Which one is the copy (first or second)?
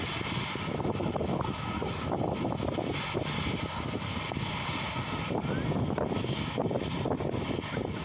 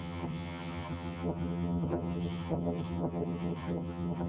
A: second